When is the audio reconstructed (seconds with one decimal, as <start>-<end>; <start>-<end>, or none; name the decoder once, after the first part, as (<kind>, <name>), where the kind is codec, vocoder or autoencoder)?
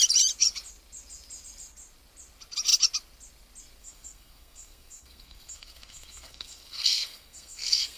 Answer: 3.8-8.0 (codec, SNAC)